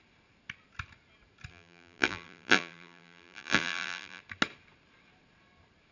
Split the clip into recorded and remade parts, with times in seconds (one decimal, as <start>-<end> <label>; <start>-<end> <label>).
0.0-1.5 recorded; 1.5-4.2 remade; 4.2-5.9 recorded